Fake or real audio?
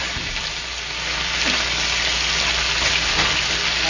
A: real